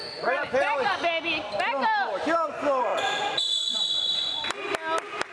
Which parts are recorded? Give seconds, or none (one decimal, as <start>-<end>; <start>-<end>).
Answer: 1.0-2.9; 4.5-5.3